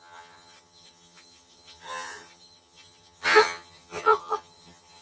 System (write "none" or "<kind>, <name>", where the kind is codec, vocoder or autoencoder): vocoder, HiFi-GAN